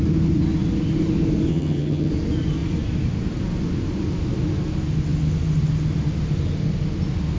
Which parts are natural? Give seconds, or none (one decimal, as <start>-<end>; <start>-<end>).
0.0-1.5; 2.1-7.4